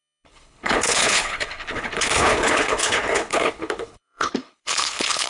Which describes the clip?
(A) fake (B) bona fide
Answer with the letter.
A